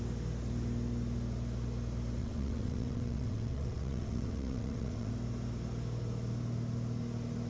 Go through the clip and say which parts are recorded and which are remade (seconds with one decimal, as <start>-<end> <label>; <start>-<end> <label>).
0.0-2.2 recorded; 2.2-5.1 remade; 5.1-7.5 recorded